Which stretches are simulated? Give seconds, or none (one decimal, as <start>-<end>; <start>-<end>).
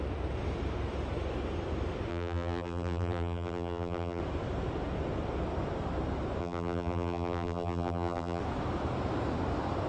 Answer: 2.1-4.2; 6.4-8.4